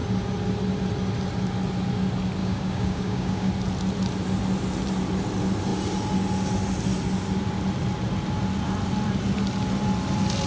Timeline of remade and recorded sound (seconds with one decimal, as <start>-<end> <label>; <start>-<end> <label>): 0.0-2.4 recorded; 2.4-3.5 remade; 3.5-10.5 recorded